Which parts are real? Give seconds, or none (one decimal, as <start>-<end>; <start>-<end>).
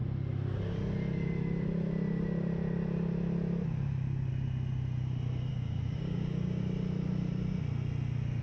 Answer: 0.0-5.5; 6.6-8.4